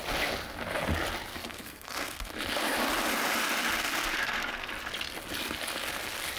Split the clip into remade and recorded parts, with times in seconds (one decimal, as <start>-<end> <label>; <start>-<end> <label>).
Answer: 0.0-1.3 recorded; 1.3-2.3 remade; 2.3-3.8 recorded; 3.8-4.7 remade; 4.7-6.4 recorded